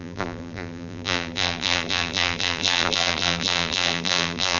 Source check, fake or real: fake